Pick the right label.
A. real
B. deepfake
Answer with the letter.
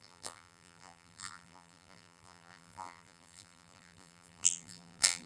B